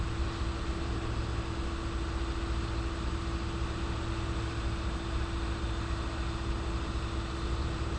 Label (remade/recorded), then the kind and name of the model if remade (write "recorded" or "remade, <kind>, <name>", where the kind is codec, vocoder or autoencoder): recorded